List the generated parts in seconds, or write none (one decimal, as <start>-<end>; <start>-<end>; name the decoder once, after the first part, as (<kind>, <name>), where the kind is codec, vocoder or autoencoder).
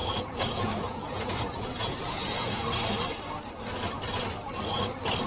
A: 0.0-2.6 (vocoder, Vocos)